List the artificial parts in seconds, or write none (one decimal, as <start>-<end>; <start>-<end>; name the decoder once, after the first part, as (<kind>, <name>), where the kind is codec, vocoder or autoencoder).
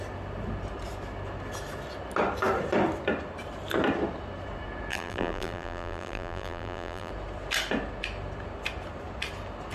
4.9-7.1 (vocoder, BigVGAN v2)